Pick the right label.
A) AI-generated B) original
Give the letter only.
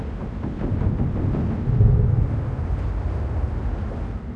B